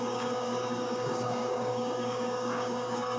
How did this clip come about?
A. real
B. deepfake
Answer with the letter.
B